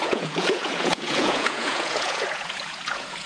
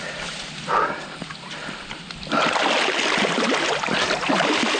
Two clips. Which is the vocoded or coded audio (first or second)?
first